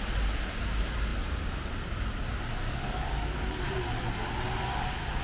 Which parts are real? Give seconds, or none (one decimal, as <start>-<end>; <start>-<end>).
0.0-2.6; 3.6-5.2